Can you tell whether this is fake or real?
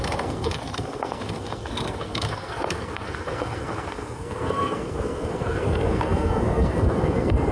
fake